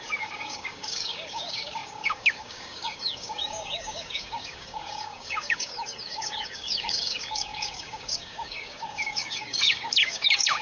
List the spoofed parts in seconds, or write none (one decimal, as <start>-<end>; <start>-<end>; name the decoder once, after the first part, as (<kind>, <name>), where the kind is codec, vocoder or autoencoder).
0.0-10.6 (codec, DAC)